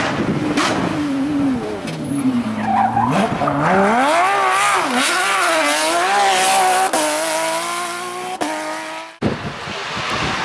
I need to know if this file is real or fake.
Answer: real